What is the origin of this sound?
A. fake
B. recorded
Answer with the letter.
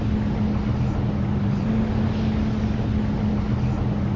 B